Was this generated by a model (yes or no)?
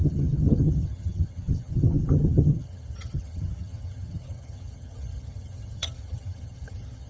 yes